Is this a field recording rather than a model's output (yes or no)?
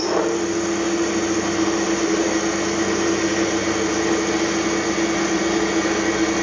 yes